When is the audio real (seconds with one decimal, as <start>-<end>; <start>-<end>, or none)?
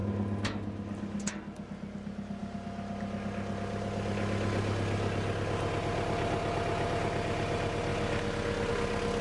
0.0-9.2